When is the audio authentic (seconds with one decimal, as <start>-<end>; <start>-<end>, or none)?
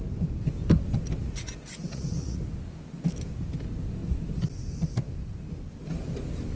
0.0-1.2; 2.4-6.6